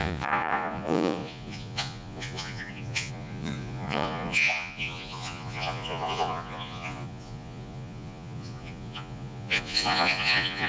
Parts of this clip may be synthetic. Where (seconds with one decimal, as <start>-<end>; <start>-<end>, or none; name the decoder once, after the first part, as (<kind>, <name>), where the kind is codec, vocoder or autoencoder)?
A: 0.0-10.7 (vocoder, Vocos)